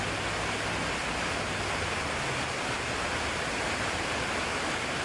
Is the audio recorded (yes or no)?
yes